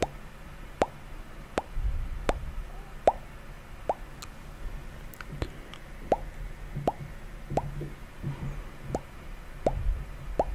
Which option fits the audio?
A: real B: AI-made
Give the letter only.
A